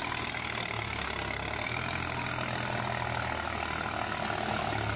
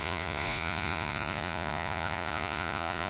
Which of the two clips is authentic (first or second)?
first